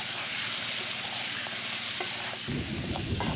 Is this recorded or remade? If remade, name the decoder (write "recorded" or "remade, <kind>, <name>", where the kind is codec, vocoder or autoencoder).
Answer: remade, vocoder, BigVGAN v2